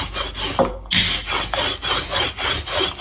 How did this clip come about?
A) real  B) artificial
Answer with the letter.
A